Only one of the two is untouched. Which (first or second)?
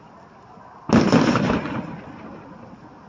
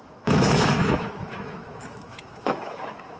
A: first